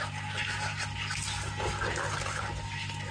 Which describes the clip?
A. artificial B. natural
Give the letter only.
B